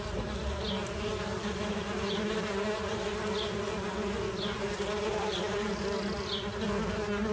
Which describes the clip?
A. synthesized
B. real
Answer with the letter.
B